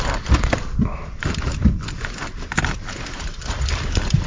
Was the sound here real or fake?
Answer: fake